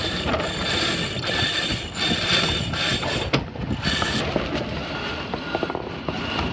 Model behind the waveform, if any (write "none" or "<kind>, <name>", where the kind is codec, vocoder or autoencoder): none